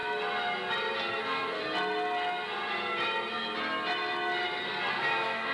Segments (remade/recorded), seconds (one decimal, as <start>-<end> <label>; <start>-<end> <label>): 0.0-1.2 recorded; 1.2-1.6 remade; 1.6-4.9 recorded; 4.9-5.5 remade